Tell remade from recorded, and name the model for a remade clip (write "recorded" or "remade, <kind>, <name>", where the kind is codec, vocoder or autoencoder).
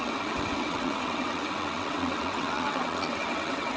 remade, vocoder, WaveNeXt